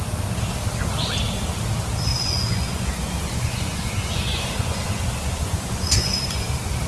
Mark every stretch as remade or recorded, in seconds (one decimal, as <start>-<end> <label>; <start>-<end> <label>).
0.0-2.1 recorded; 2.1-6.2 remade; 6.2-6.9 recorded